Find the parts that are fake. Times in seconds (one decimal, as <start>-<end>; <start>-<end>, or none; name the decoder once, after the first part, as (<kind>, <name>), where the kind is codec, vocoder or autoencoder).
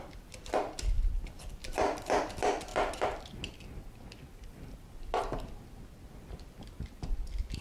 1.6-2.2 (vocoder, BigVGAN v2)